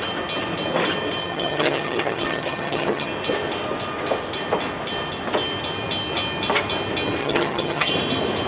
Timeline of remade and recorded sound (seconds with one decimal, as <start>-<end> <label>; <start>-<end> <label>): 0.0-1.2 recorded; 1.2-3.1 remade; 3.1-7.2 recorded; 7.2-7.9 remade; 7.9-8.5 recorded

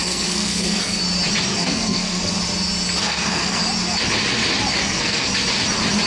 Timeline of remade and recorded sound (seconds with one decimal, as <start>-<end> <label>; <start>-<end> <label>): 0.0-1.0 remade; 1.0-1.5 recorded; 1.5-2.3 remade; 2.3-3.0 recorded; 3.0-3.6 remade; 3.6-4.8 recorded; 4.8-5.3 remade; 5.3-6.1 recorded

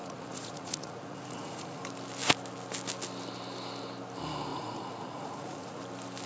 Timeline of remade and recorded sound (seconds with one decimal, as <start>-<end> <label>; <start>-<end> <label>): 0.0-1.8 remade; 1.8-4.5 recorded; 4.5-5.8 remade; 5.8-6.3 recorded

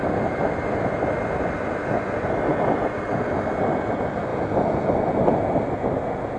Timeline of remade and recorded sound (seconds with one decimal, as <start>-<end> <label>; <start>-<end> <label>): 0.0-6.4 recorded

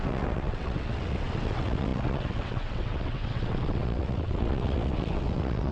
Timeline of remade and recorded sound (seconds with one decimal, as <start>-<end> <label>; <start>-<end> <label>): 0.0-5.7 remade

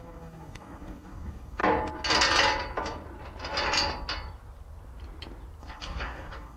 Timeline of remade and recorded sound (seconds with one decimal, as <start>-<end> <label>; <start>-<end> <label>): 0.0-1.6 remade; 1.6-5.6 recorded; 5.6-6.6 remade